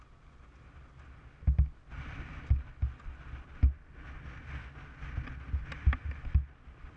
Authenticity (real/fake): real